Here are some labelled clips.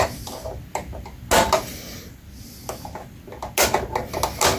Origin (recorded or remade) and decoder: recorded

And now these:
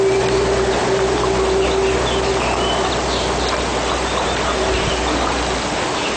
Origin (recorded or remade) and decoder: recorded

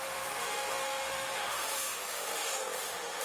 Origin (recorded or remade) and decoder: remade, autoencoder, DAC-VAE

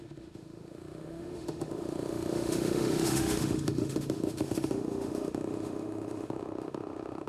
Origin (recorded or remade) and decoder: remade, autoencoder, DAC-VAE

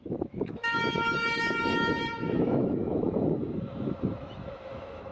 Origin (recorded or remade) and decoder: remade, autoencoder, DAC-VAE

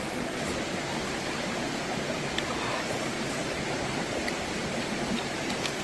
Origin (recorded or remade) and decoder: recorded